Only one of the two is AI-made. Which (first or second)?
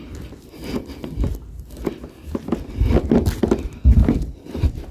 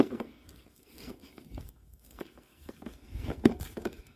second